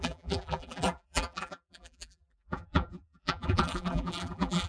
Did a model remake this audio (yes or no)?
yes